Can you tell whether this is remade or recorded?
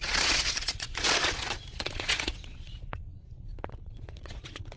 remade